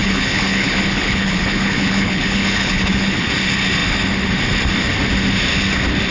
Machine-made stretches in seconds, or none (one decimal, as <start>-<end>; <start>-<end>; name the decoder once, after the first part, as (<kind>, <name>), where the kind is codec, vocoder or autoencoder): 0.0-3.3 (codec, HILCodec)